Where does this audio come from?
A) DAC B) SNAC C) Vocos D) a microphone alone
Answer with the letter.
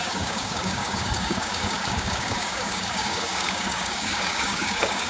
A